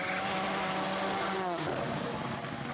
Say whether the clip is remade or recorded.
recorded